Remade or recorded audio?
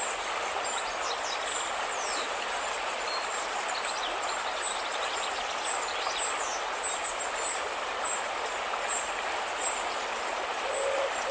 recorded